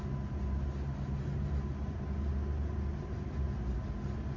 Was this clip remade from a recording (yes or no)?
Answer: no